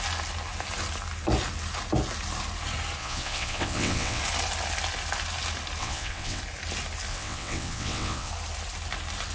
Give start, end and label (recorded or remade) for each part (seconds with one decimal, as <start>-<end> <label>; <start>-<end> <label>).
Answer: 0.0-3.0 recorded; 3.0-4.2 remade; 4.2-5.8 recorded; 5.8-6.4 remade; 6.4-7.1 recorded; 7.1-8.3 remade; 8.3-9.3 recorded